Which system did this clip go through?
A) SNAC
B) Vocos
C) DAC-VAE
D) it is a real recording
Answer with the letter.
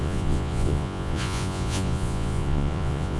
B